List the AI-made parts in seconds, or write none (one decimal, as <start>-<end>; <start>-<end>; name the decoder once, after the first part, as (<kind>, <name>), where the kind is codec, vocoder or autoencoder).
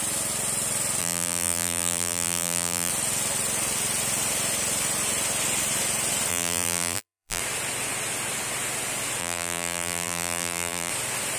1.0-2.9 (vocoder, BigVGAN v2); 6.3-7.4; 9.2-10.9